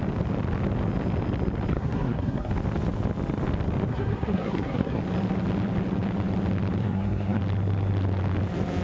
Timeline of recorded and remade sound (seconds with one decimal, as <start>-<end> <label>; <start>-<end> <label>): 0.0-1.7 recorded; 1.7-2.5 remade; 2.5-3.9 recorded; 3.9-5.0 remade; 5.0-6.8 recorded; 6.8-7.4 remade; 7.4-8.8 recorded